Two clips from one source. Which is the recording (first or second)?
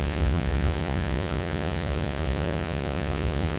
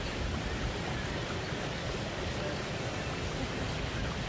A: second